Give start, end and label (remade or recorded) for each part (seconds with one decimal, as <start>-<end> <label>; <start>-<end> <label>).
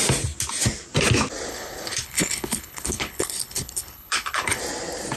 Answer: 0.0-1.5 recorded; 1.5-4.6 remade; 4.6-5.2 recorded